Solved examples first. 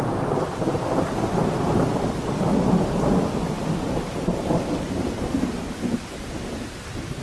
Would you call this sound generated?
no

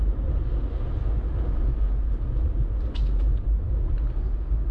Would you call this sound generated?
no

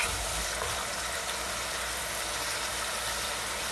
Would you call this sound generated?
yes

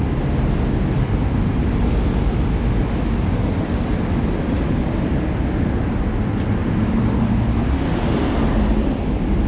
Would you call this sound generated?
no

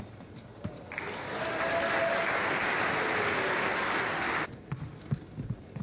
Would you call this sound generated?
no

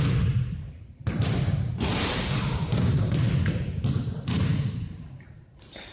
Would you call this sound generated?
no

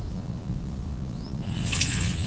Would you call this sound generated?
yes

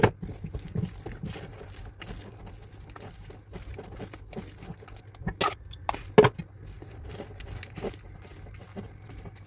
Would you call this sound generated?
no